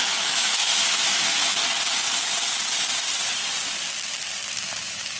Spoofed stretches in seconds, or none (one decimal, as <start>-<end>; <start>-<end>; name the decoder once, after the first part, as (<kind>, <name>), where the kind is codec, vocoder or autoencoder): 0.0-1.6 (autoencoder, DAC-VAE); 4.5-5.2